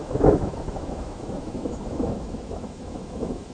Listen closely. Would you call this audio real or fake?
fake